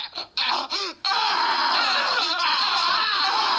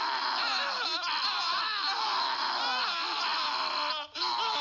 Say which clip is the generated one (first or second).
first